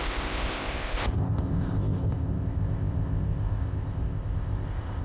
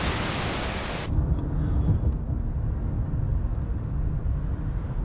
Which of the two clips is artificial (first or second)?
first